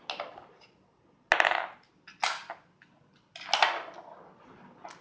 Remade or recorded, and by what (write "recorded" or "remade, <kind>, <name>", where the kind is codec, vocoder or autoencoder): recorded